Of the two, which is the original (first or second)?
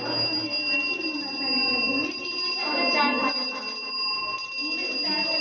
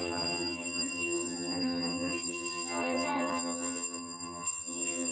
first